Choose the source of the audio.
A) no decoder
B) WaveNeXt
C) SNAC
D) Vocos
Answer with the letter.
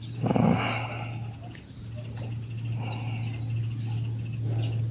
A